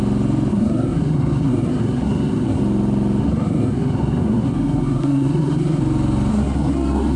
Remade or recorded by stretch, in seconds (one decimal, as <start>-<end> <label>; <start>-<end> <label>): 0.0-0.5 recorded; 0.5-2.6 remade; 2.6-3.2 recorded; 3.2-5.8 remade; 5.8-6.3 recorded; 6.3-7.2 remade

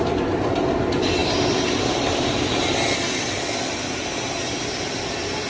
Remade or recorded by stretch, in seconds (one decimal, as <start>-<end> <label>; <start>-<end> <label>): 0.0-5.5 recorded

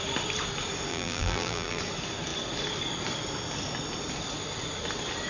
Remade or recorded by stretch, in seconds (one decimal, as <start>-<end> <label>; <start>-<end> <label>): 0.0-0.9 recorded; 0.9-1.8 remade; 1.8-5.3 recorded

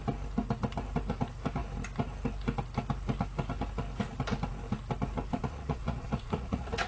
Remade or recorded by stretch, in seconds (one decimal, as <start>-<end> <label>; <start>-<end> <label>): 0.0-5.3 recorded; 5.3-6.9 remade